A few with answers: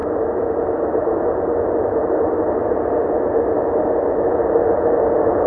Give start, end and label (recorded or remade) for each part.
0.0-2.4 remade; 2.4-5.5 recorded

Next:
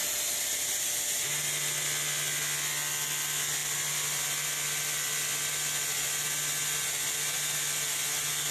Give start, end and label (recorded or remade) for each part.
0.0-0.7 remade; 0.7-8.5 recorded

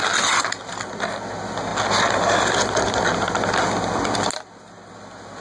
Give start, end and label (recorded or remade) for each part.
0.0-5.4 recorded

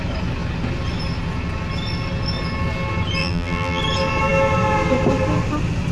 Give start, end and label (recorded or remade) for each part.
0.0-3.2 recorded; 3.2-3.8 remade; 3.8-5.9 recorded